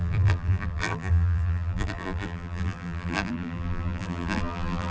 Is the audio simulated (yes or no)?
yes